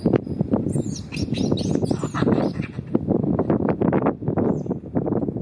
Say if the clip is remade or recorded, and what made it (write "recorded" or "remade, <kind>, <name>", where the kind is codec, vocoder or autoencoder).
recorded